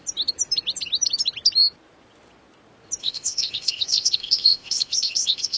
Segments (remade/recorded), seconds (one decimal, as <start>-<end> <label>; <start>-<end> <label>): 0.0-3.0 recorded; 3.0-5.6 remade